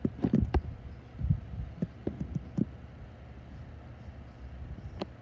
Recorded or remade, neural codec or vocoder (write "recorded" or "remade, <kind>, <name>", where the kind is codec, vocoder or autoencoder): recorded